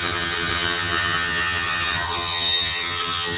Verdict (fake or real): fake